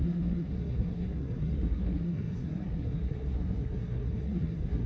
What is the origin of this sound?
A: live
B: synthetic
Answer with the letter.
B